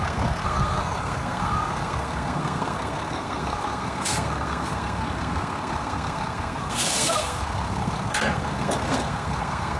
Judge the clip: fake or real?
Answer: fake